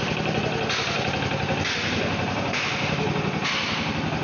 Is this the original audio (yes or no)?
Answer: yes